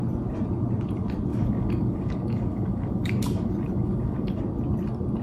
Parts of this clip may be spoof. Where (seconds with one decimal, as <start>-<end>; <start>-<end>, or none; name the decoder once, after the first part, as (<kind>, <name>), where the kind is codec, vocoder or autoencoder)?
1.3-4.4 (codec, DAC)